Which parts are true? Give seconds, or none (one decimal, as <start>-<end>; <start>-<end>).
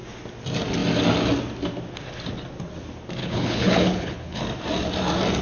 0.0-3.2; 4.4-5.4